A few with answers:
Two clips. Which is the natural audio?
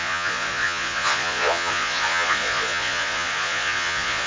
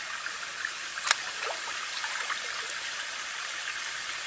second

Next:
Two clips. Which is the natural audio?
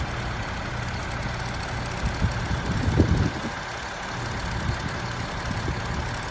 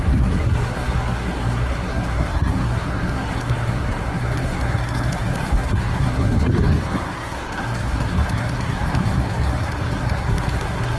first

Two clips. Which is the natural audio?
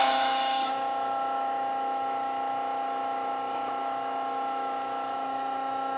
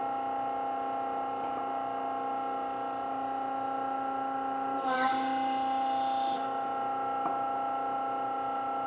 second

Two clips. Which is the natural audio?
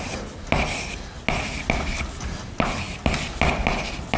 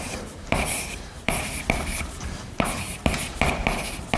first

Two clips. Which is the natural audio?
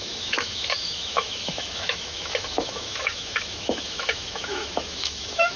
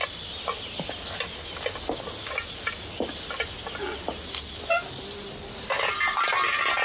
second